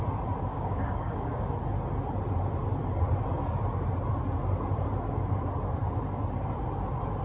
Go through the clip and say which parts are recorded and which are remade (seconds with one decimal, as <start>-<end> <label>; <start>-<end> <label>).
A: 0.0-0.5 recorded; 0.5-1.5 remade; 1.5-7.2 recorded